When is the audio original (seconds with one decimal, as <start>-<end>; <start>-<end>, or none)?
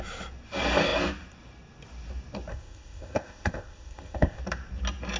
0.0-2.5; 4.4-5.2